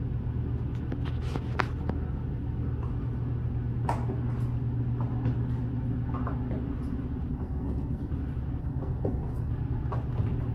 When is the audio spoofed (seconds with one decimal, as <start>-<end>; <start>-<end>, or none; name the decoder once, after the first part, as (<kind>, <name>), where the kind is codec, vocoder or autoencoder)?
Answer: 7.3-8.1 (codec, SNAC); 8.6-9.5